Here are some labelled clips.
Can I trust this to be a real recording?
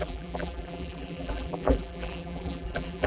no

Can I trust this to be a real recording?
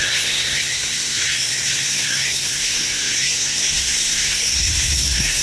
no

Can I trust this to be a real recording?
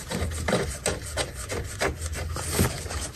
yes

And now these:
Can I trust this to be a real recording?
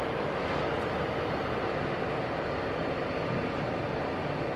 yes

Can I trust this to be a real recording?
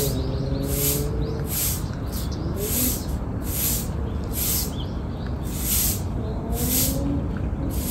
yes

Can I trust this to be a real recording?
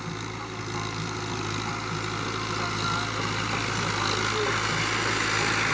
yes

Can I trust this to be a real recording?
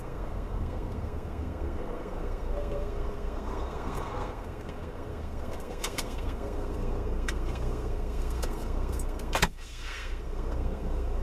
no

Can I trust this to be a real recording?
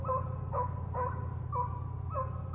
yes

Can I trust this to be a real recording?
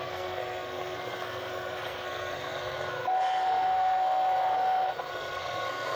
no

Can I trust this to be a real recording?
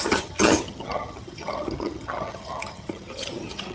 no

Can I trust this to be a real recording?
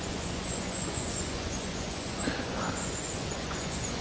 no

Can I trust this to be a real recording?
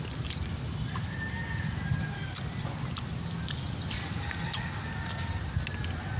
yes